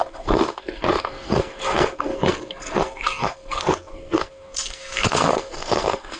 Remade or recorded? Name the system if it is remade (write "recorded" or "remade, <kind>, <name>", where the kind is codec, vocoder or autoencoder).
remade, codec, SNAC